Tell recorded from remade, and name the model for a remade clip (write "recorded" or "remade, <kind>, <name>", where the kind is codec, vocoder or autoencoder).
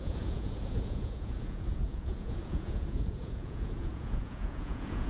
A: remade, vocoder, Vocos